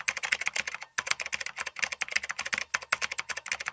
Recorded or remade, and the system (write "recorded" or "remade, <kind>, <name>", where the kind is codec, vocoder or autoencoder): recorded